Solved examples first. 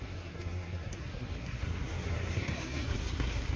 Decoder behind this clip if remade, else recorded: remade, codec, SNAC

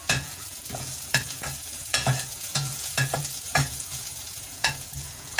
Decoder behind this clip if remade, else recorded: remade, vocoder, Vocos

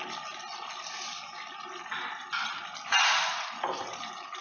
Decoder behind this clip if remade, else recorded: recorded